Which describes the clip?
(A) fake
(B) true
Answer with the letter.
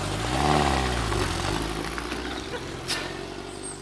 B